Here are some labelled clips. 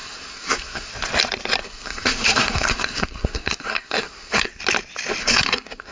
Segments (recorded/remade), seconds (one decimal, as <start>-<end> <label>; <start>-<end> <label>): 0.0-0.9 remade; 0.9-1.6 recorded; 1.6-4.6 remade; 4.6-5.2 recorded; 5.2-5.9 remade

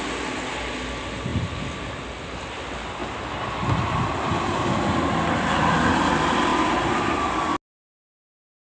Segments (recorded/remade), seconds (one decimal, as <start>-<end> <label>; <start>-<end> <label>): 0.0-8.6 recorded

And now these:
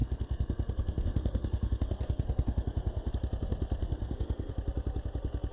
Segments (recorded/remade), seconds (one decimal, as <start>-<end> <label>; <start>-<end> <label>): 0.0-3.1 remade; 3.1-3.8 recorded; 3.8-4.5 remade; 4.5-5.5 recorded